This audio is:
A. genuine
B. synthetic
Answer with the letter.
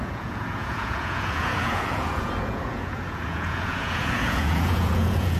B